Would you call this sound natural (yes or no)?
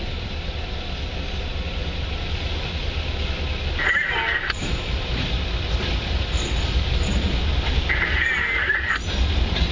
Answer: yes